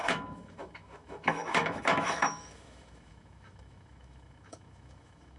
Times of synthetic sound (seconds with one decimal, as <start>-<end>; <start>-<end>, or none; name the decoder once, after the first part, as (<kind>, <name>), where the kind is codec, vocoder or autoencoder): 0.0-5.4 (autoencoder, DAC-VAE)